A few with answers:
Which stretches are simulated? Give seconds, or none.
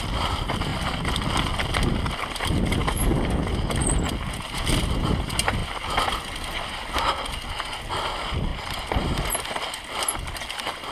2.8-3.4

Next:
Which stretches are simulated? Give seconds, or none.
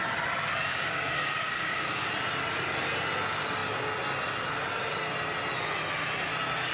0.7-2.1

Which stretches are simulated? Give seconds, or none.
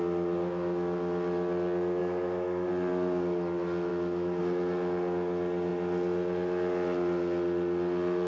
2.0-2.7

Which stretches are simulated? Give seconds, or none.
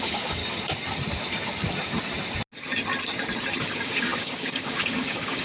0.0-0.4; 3.6-5.4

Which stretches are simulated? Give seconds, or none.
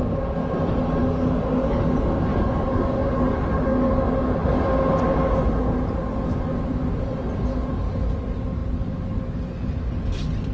1.0-1.8; 2.3-3.9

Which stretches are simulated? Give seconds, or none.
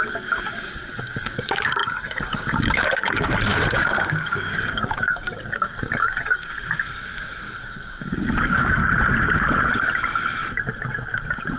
0.0-8.8